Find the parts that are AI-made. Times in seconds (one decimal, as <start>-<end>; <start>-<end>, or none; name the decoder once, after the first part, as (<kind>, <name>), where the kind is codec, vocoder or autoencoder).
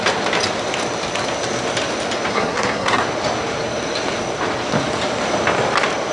2.3-3.0 (codec, SNAC)